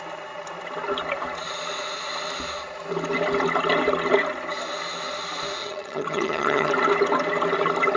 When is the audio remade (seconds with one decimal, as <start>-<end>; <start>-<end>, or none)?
5.6-6.7